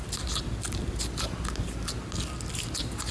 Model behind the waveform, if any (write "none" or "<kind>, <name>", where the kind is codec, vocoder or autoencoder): none